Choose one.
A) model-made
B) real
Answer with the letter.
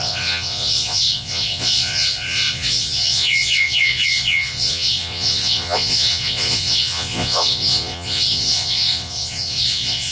A